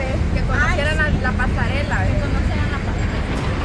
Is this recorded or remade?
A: recorded